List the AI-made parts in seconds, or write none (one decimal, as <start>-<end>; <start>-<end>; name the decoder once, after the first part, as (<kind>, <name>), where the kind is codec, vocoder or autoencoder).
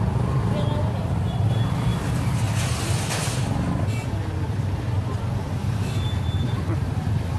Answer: none